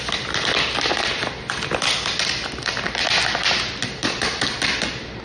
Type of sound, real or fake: real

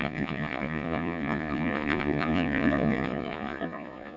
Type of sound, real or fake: fake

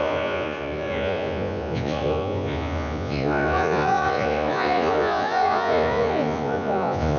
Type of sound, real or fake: fake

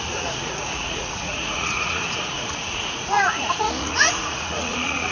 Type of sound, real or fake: fake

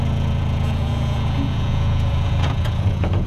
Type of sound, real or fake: fake